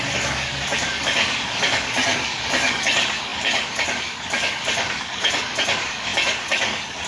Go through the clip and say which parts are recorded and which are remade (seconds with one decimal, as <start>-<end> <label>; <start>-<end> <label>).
0.0-7.1 remade